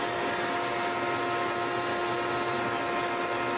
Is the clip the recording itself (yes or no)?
yes